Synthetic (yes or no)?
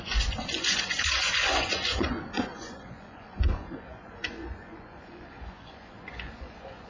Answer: yes